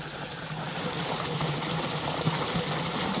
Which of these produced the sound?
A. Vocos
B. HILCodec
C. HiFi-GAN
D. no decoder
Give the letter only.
D